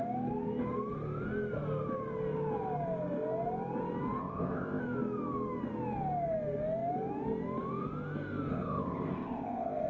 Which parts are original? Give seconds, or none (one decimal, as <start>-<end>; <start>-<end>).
0.0-4.2; 4.8-8.5